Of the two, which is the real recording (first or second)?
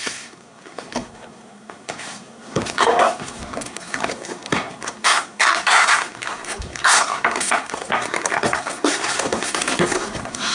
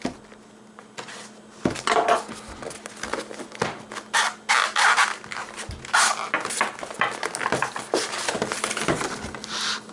second